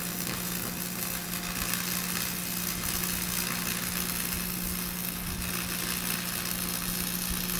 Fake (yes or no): no